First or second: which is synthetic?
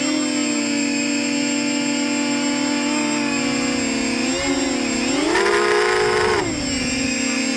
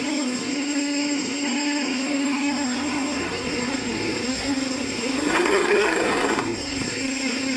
second